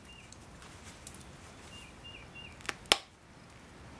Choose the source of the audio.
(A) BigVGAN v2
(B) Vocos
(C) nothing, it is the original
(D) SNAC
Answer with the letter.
C